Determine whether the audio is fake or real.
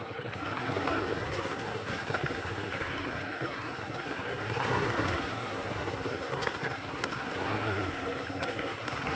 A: fake